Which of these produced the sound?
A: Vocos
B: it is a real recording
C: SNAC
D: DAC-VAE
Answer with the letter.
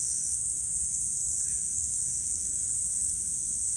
C